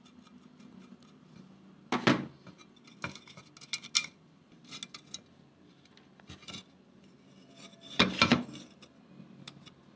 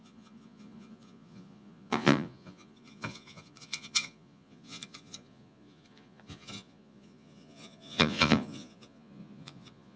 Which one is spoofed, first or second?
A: second